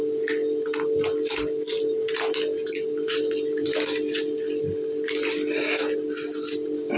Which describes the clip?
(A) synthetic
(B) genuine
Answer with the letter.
B